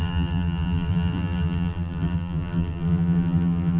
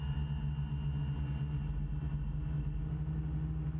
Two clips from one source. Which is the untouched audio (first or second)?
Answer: second